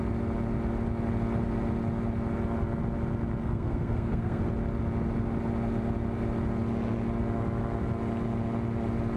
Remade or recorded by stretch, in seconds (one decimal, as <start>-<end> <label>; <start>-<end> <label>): 0.0-3.4 recorded; 3.4-4.4 remade; 4.4-9.2 recorded